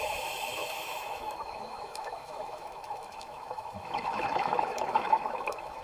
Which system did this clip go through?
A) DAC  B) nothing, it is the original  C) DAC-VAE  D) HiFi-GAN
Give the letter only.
C